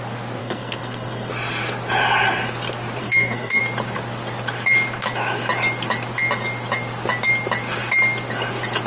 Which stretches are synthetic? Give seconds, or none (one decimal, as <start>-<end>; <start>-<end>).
0.4-1.3; 3.0-3.6